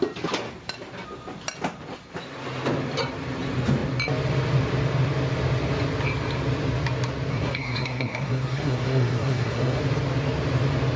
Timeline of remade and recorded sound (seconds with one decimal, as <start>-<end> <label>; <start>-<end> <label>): 0.0-7.3 recorded; 7.3-9.8 remade; 9.8-11.0 recorded